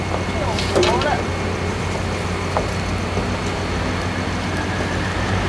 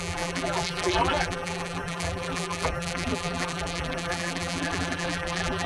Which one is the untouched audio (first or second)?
first